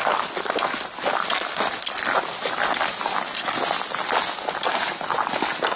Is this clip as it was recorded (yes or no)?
yes